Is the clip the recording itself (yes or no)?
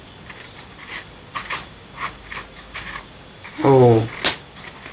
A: yes